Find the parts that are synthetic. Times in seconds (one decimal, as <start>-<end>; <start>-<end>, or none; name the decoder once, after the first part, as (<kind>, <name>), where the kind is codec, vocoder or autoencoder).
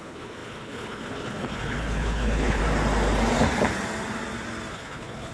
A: 0.0-2.6 (codec, HILCodec); 4.7-5.3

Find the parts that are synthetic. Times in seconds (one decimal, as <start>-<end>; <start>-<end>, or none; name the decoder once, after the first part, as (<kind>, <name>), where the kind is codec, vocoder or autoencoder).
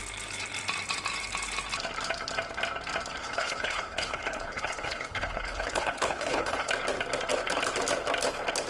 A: 3.2-6.7 (codec, HILCodec)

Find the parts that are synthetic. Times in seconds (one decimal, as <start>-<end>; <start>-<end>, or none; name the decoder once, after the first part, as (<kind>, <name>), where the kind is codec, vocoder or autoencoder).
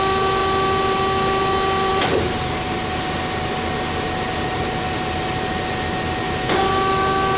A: none